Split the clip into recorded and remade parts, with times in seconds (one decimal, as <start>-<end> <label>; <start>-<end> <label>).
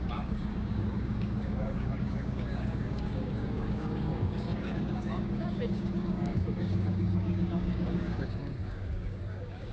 0.0-9.7 remade